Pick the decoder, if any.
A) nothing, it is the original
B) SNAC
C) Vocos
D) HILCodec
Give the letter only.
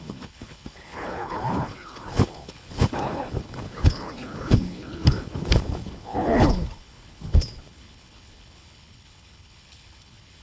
D